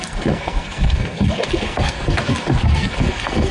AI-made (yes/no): yes